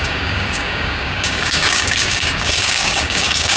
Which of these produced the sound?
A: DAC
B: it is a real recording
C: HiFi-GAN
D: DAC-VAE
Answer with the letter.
A